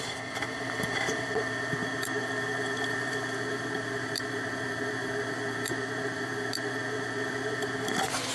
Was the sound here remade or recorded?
remade